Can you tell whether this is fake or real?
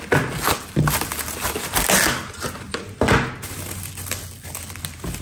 real